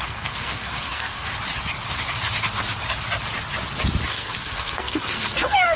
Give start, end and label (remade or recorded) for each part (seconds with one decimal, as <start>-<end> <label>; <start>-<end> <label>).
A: 0.0-1.3 remade; 1.3-4.1 recorded; 4.1-5.8 remade